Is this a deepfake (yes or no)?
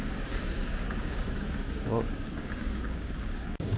yes